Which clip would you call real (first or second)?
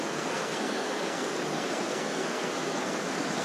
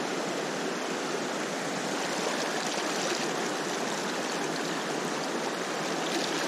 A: second